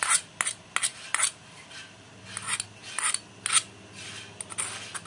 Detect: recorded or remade recorded